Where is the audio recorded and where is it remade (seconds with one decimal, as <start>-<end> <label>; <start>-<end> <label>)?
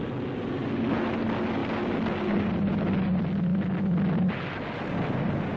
0.0-5.6 recorded